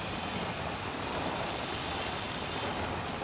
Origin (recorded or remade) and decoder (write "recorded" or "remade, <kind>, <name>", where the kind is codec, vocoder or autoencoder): recorded